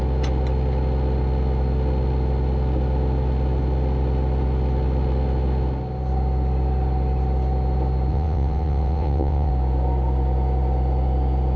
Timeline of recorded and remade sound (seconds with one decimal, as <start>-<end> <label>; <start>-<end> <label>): 0.0-8.1 recorded; 8.1-9.5 remade; 9.5-11.6 recorded